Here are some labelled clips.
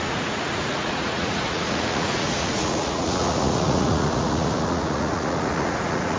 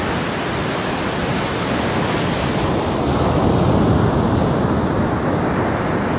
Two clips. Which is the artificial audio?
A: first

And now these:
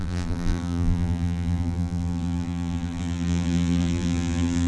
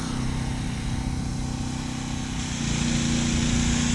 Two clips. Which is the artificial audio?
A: first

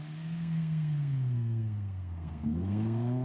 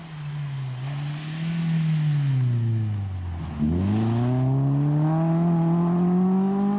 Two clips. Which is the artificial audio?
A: first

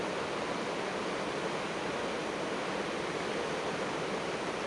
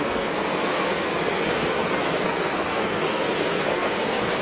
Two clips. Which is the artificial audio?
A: second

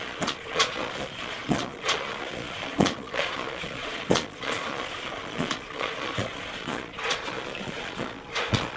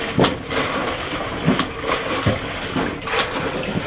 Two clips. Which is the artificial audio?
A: first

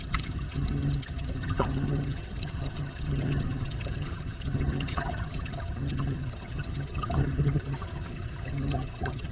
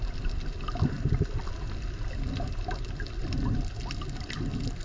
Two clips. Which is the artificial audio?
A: first